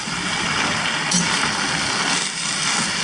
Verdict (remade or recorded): recorded